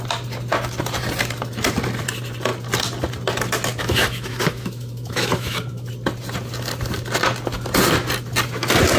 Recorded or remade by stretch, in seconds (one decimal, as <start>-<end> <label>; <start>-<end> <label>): 0.0-3.7 recorded; 3.7-5.9 remade; 5.9-9.0 recorded